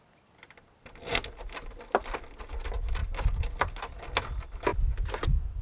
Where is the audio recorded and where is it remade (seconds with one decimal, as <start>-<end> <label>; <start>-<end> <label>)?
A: 0.0-5.6 recorded